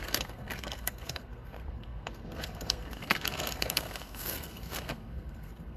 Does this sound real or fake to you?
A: fake